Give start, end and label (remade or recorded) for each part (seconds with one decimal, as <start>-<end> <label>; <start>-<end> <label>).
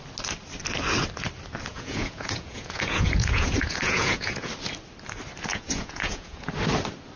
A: 0.0-1.7 recorded; 1.7-4.5 remade; 4.5-5.5 recorded; 5.5-6.5 remade; 6.5-7.2 recorded